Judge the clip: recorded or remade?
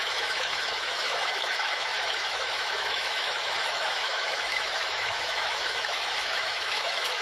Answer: remade